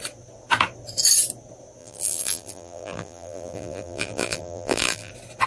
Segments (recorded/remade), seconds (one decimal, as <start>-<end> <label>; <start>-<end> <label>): 0.0-1.8 recorded; 1.8-5.1 remade; 5.1-5.5 recorded